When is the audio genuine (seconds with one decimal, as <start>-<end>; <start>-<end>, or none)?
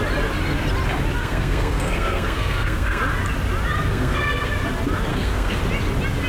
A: 0.0-1.2; 3.0-3.9; 4.5-5.1; 5.6-6.3